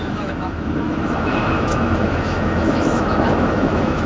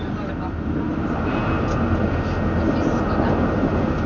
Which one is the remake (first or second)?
first